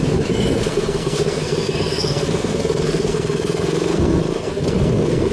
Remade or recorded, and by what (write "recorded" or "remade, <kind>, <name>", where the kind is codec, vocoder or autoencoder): remade, codec, SNAC